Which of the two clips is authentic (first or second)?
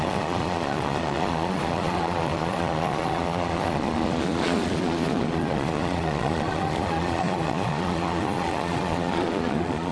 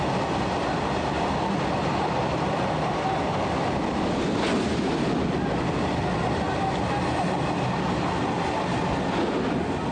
second